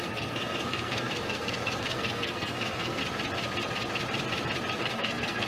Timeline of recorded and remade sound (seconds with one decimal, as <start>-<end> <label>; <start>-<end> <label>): 0.0-3.0 remade; 3.0-4.7 recorded; 4.7-5.5 remade